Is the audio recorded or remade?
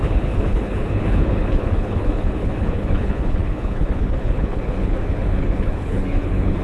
remade